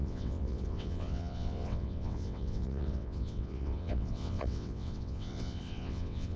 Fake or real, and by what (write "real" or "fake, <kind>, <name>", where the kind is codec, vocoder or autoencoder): fake, vocoder, WaveNeXt